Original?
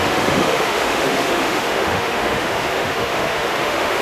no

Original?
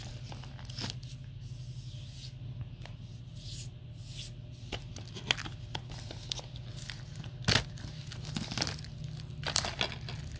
yes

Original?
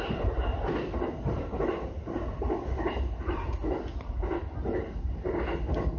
yes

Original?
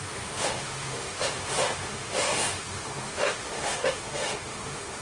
no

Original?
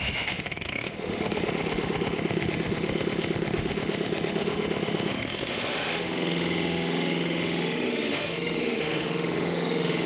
no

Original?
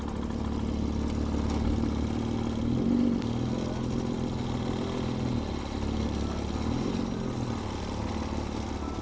yes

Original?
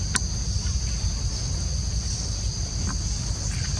yes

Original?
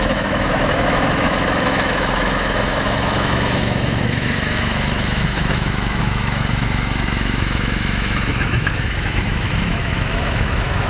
no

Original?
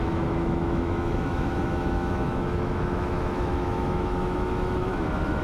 no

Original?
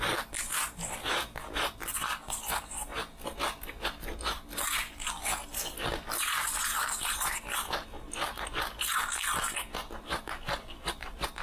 yes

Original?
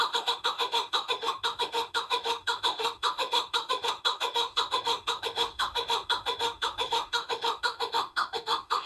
no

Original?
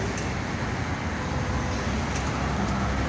yes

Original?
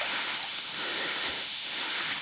no